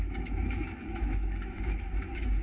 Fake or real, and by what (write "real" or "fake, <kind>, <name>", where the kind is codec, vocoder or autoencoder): fake, autoencoder, DAC-VAE